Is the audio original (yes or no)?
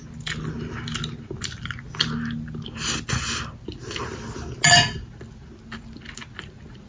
yes